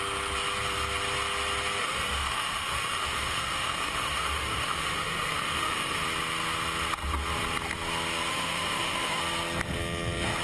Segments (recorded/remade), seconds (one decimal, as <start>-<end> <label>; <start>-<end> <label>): 0.0-1.8 recorded; 1.8-6.0 remade; 6.0-8.3 recorded; 8.3-9.2 remade; 9.2-10.4 recorded